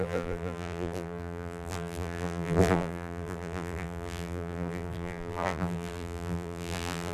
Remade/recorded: remade